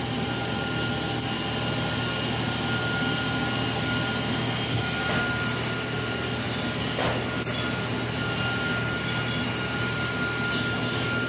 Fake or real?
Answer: real